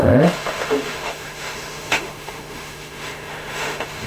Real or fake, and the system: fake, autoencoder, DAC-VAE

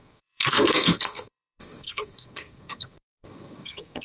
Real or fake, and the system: fake, codec, SNAC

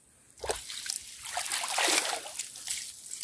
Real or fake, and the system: real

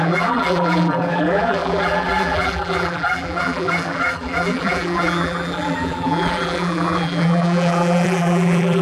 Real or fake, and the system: fake, vocoder, BigVGAN v2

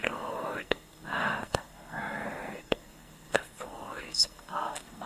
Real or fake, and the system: fake, codec, SNAC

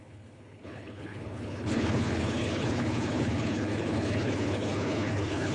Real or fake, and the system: fake, codec, HILCodec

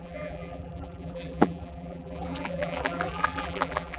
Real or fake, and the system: fake, vocoder, BigVGAN v2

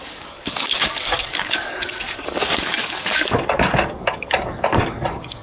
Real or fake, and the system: fake, codec, DAC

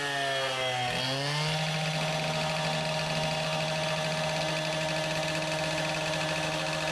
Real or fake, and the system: real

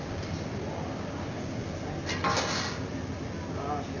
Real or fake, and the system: real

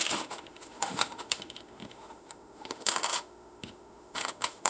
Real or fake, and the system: fake, autoencoder, DAC-VAE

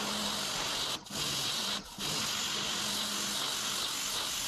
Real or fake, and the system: real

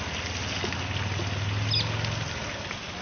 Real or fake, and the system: real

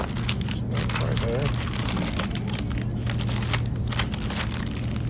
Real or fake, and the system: real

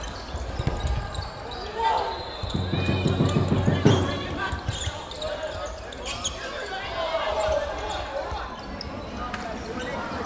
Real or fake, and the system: real